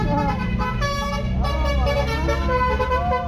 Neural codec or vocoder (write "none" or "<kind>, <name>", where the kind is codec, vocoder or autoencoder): none